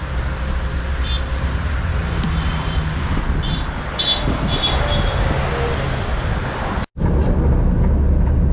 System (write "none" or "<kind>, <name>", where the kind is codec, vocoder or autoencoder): none